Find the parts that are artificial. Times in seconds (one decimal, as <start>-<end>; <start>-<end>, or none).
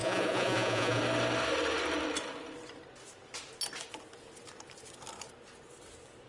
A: 0.0-1.0